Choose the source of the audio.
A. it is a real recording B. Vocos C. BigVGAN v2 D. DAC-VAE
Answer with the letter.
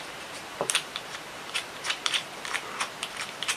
C